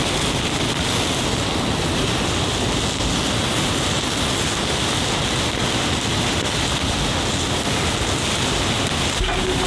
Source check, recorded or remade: recorded